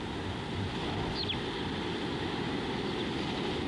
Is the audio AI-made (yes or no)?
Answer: no